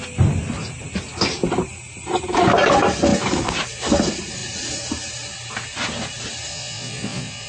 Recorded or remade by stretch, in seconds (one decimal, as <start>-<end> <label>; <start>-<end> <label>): 0.0-6.5 recorded; 6.5-7.5 remade